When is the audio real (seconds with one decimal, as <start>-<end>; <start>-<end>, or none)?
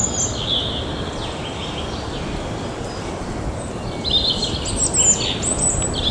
0.0-6.1